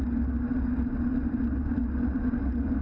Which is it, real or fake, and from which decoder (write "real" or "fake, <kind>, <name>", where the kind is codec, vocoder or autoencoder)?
real